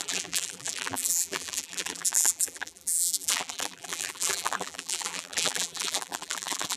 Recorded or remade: remade